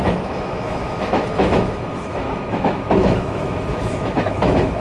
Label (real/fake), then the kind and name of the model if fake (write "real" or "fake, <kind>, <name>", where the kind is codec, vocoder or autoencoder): fake, autoencoder, DAC-VAE